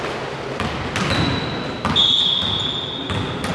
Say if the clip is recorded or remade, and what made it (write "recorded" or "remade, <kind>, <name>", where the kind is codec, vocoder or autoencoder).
recorded